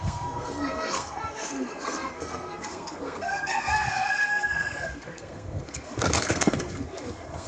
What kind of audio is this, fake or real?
fake